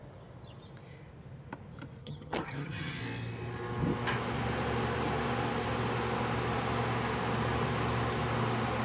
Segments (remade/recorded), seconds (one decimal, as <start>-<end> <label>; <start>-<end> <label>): 0.0-2.0 recorded; 2.0-3.0 remade; 3.0-8.8 recorded